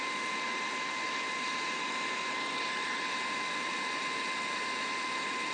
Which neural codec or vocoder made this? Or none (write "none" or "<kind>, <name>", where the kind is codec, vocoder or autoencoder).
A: vocoder, BigVGAN v2